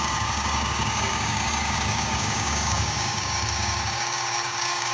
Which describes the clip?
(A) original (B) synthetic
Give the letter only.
B